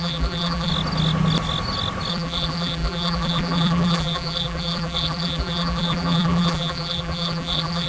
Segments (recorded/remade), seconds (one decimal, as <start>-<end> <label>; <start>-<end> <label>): 0.0-0.7 remade; 0.7-2.1 recorded; 2.1-7.9 remade